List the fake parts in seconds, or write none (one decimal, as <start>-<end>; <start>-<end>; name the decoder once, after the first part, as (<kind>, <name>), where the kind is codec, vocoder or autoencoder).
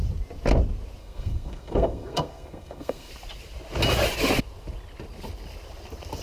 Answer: 1.0-3.1 (codec, SNAC)